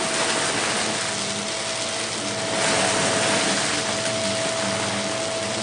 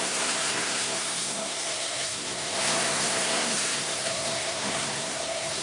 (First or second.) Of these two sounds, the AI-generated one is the second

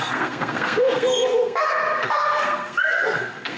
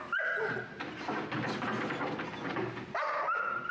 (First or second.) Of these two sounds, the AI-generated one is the first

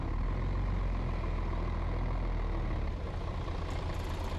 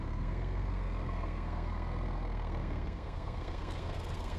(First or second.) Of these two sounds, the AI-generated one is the second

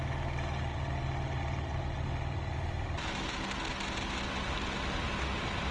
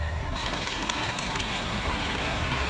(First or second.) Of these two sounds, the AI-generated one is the second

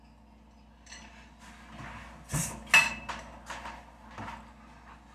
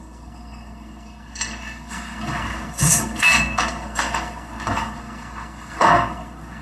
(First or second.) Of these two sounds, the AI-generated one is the second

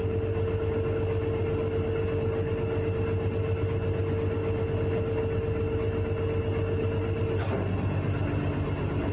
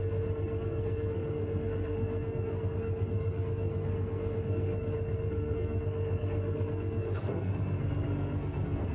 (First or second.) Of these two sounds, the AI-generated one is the second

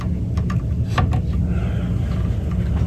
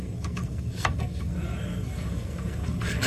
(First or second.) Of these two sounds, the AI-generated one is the second